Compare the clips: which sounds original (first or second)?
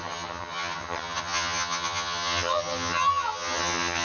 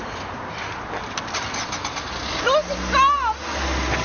second